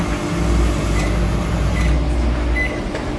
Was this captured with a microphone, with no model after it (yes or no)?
yes